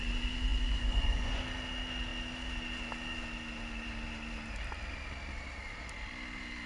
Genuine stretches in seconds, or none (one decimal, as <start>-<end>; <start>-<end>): 0.0-0.5; 1.4-6.7